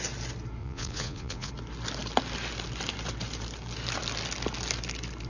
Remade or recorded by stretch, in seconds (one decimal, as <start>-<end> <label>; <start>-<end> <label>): 0.0-0.6 recorded; 0.6-1.5 remade; 1.5-5.3 recorded

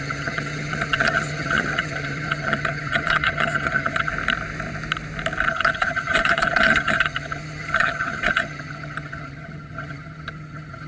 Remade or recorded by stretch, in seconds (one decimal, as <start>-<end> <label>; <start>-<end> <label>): 0.0-4.1 remade; 4.1-5.5 recorded; 5.5-10.9 remade

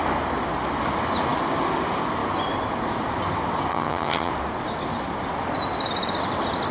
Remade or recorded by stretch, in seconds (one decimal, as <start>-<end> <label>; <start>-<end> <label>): 0.0-3.7 recorded; 3.7-4.3 remade; 4.3-6.7 recorded

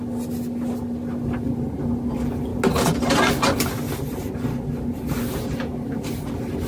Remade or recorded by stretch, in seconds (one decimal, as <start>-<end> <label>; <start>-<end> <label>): 0.0-6.7 recorded

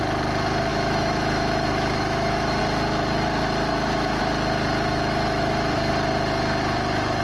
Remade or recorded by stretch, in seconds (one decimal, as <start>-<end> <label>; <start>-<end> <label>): 0.0-0.7 recorded; 0.7-2.6 remade; 2.6-3.7 recorded; 3.7-4.2 remade; 4.2-4.9 recorded; 4.9-5.9 remade; 5.9-7.2 recorded

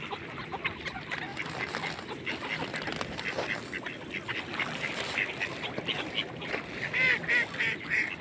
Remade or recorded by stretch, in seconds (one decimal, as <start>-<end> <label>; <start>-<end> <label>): 0.0-8.2 recorded

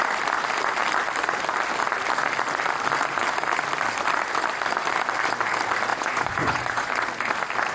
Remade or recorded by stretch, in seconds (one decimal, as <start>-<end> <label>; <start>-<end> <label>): 0.0-5.9 recorded; 5.9-6.9 remade; 6.9-7.7 recorded

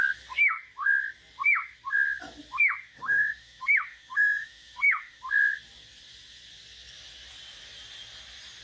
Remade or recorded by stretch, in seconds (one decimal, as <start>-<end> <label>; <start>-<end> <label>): 0.0-2.9 recorded; 2.9-5.2 remade; 5.2-8.6 recorded